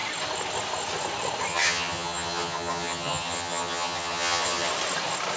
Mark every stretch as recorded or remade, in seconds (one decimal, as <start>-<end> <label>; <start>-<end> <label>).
0.0-1.5 recorded; 1.5-4.7 remade; 4.7-5.4 recorded